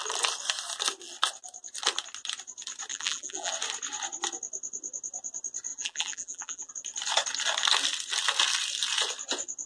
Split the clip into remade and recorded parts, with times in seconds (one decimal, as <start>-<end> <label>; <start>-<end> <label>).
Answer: 0.0-2.9 recorded; 2.9-3.5 remade; 3.5-5.7 recorded; 5.7-6.7 remade; 6.7-9.7 recorded